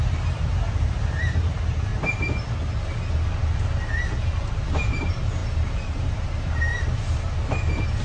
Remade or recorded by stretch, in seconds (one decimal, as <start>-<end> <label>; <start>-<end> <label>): 0.0-1.9 remade; 1.9-4.5 recorded; 4.5-6.7 remade; 6.7-8.0 recorded

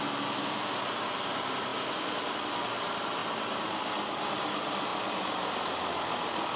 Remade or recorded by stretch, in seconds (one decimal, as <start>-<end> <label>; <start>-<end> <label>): 0.0-6.6 recorded

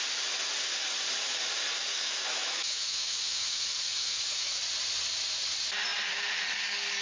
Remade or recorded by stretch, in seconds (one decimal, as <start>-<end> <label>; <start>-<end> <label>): 0.0-1.9 recorded; 1.9-4.6 remade; 4.6-7.0 recorded

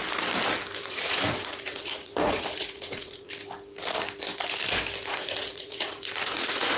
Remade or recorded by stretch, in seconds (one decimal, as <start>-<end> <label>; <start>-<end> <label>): 0.0-0.8 recorded; 0.8-3.3 remade; 3.3-5.0 recorded; 5.0-6.8 remade

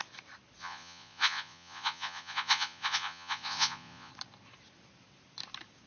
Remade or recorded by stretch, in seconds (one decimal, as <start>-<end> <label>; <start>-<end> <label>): 0.0-0.6 recorded; 0.6-4.1 remade; 4.1-5.9 recorded

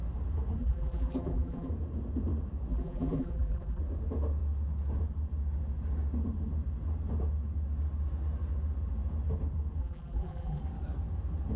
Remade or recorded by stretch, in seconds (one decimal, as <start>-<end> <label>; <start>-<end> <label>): 0.0-0.6 recorded; 0.6-1.7 remade; 1.7-2.7 recorded; 2.7-3.8 remade; 3.8-9.8 recorded; 9.8-10.6 remade; 10.6-11.6 recorded